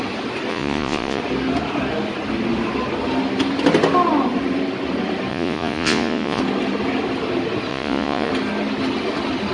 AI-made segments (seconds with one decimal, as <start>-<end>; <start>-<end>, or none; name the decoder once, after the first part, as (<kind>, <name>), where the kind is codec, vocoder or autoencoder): 0.5-1.2 (vocoder, Vocos); 5.3-6.4; 7.7-8.3